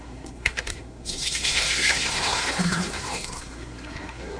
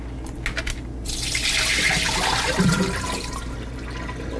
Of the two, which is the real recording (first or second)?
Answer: second